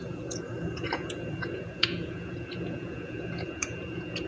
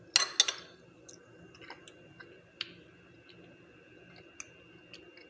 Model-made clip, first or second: first